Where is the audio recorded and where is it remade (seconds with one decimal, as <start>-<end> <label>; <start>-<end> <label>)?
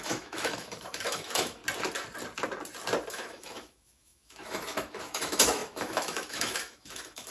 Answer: 0.0-1.6 remade; 1.6-3.1 recorded; 3.1-7.3 remade